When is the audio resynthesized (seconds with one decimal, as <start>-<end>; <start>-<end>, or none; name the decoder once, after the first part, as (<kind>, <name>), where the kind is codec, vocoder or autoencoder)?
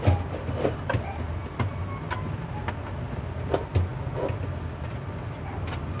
none